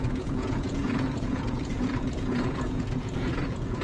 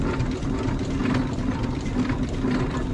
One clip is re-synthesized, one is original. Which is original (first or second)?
second